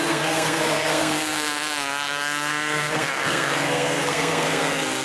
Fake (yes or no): yes